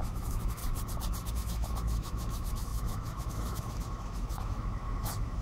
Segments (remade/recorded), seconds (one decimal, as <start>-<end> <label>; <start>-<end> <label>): 0.0-0.6 remade; 0.6-1.3 recorded; 1.3-5.4 remade